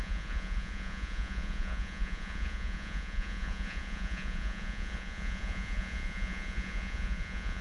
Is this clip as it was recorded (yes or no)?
no